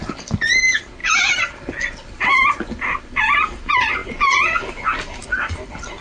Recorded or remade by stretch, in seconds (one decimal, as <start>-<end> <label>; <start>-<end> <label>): 0.0-6.0 recorded